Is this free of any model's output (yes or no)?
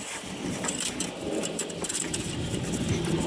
no